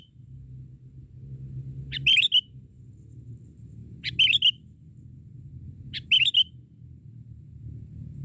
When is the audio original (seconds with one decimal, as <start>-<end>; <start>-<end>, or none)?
0.0-8.2